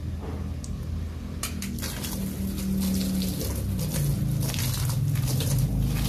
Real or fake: real